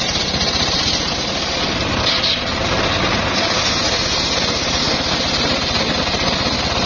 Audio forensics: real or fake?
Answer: real